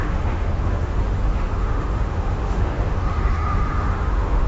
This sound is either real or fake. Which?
fake